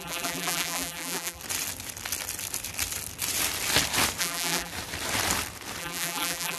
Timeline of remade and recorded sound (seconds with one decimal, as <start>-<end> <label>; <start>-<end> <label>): 0.0-1.4 remade; 1.4-4.2 recorded; 4.2-4.7 remade; 4.7-5.8 recorded; 5.8-6.6 remade